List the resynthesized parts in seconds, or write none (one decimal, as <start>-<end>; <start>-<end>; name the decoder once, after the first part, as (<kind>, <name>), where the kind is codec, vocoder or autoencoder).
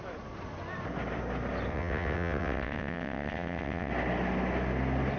1.7-3.9 (vocoder, WaveNeXt)